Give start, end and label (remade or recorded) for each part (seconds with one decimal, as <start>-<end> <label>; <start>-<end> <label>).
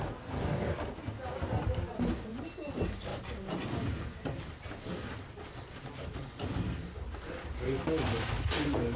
0.0-9.0 recorded